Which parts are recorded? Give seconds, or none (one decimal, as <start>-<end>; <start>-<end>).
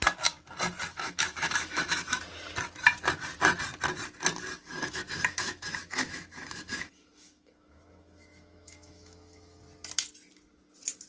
0.0-0.9; 2.2-4.6; 9.6-11.1